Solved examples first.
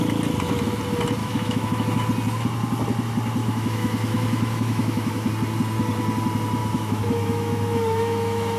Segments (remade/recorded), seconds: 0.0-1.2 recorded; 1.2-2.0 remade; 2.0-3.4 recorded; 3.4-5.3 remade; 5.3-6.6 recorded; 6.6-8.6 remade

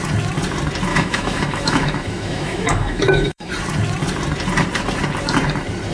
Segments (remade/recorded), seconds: 0.0-0.9 recorded; 0.9-3.5 remade; 3.5-5.9 recorded

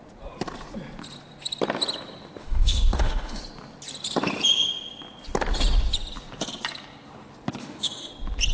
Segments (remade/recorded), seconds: 0.0-2.4 recorded; 2.4-3.4 remade; 3.4-7.6 recorded; 7.6-8.1 remade; 8.1-8.5 recorded

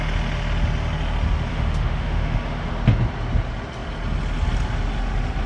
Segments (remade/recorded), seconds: 0.0-1.5 recorded; 1.5-2.7 remade; 2.7-5.5 recorded